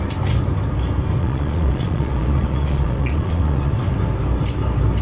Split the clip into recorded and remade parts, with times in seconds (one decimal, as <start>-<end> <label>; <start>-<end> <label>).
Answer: 0.0-1.2 recorded; 1.2-3.7 remade; 3.7-5.0 recorded